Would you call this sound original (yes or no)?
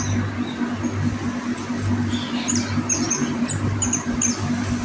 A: yes